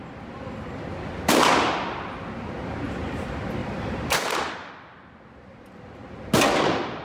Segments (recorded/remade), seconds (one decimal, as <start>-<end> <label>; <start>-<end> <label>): 0.0-3.6 recorded; 3.6-4.7 remade; 4.7-7.0 recorded